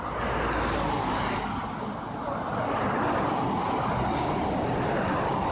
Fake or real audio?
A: real